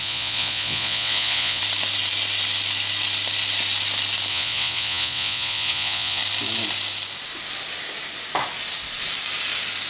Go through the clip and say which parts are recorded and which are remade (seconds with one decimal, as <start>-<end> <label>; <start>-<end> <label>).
0.0-1.6 remade; 1.6-4.3 recorded; 4.3-6.2 remade; 6.2-9.9 recorded